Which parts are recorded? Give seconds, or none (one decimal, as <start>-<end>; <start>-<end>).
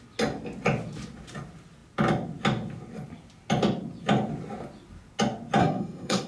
0.0-5.6